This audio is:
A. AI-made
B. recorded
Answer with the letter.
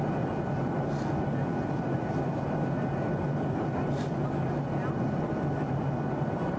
B